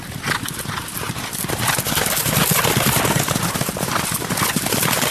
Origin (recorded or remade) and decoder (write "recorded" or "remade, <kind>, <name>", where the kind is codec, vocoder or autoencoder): recorded